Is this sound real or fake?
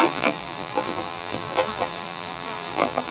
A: fake